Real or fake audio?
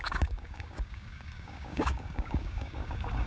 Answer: fake